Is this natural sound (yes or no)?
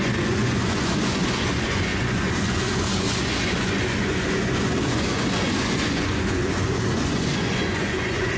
no